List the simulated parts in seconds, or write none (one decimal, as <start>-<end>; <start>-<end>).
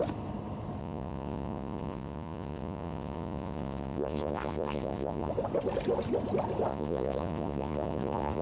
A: 0.8-5.3; 6.7-8.4